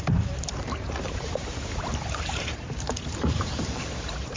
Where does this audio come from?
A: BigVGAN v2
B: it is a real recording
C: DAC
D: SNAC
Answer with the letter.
A